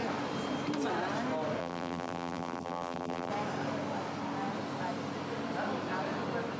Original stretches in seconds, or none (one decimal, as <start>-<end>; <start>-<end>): 0.0-1.6; 3.3-6.6